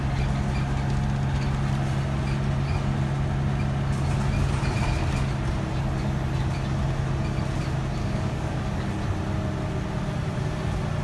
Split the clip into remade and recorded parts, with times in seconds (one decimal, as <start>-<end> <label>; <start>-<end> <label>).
0.0-8.0 recorded; 8.0-8.9 remade; 8.9-11.0 recorded